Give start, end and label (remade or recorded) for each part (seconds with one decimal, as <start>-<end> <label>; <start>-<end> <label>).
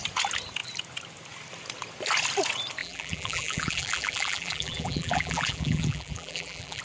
0.0-2.8 recorded; 2.8-6.8 remade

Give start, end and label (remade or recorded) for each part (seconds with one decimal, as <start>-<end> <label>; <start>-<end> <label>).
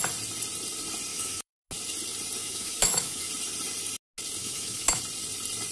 0.0-1.1 recorded; 1.1-1.7 remade; 1.7-2.4 recorded; 2.4-3.3 remade; 3.3-4.4 recorded; 4.4-5.0 remade; 5.0-5.7 recorded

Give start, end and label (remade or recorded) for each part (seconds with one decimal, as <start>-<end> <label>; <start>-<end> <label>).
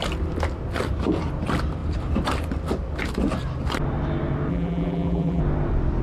0.0-4.5 recorded; 4.5-5.4 remade; 5.4-6.0 recorded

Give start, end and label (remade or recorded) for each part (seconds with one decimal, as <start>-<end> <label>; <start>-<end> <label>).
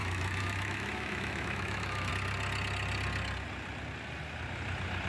0.0-2.1 remade; 2.1-5.1 recorded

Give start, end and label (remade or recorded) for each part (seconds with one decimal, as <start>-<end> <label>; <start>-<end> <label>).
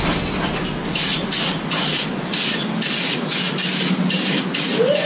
0.0-5.1 recorded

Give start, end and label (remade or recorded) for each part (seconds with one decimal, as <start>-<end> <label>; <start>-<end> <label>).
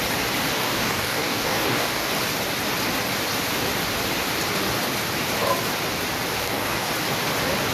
0.0-0.6 recorded; 0.6-2.1 remade; 2.1-6.4 recorded; 6.4-6.9 remade; 6.9-7.7 recorded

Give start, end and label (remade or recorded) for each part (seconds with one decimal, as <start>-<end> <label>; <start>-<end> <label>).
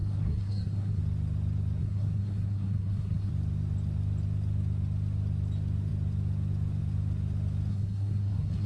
0.0-1.0 remade; 1.0-1.8 recorded; 1.8-3.3 remade; 3.3-7.7 recorded; 7.7-8.7 remade